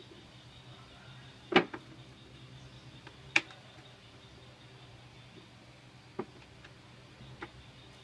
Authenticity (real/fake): real